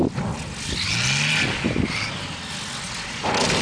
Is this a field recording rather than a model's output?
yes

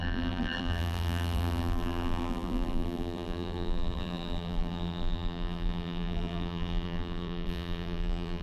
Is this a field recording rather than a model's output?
no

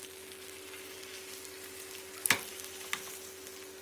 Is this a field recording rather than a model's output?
yes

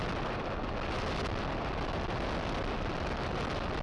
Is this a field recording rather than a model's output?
yes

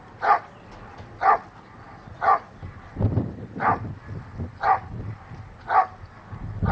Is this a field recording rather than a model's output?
yes